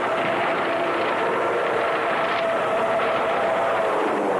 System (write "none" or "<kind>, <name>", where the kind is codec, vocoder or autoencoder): vocoder, BigVGAN v2